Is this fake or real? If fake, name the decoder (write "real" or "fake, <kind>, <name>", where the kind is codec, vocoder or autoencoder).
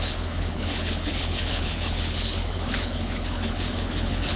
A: fake, codec, HILCodec